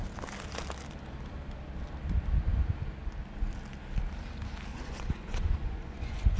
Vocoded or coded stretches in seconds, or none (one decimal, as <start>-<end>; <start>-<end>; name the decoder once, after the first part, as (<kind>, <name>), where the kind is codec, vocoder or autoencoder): 4.7-6.4 (vocoder, Vocos)